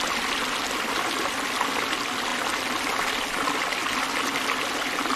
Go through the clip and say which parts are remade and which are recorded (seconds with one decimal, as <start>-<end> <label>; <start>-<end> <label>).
0.0-5.2 recorded